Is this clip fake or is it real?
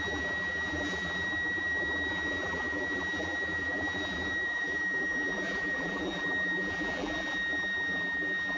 fake